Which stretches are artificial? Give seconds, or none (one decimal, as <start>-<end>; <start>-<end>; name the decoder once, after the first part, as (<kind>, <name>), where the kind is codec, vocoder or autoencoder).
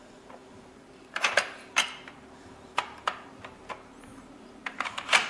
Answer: 0.0-5.3 (vocoder, BigVGAN v2)